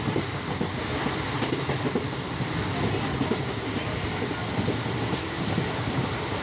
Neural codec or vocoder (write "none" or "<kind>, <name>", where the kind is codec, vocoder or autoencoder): none